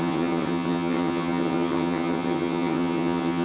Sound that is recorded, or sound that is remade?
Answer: remade